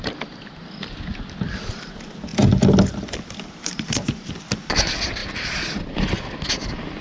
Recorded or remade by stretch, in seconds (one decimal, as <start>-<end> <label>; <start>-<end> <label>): 0.0-7.0 recorded